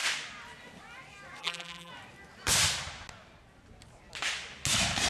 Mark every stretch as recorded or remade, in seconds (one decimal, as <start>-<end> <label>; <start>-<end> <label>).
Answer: 0.0-1.4 recorded; 1.4-1.9 remade; 1.9-5.1 recorded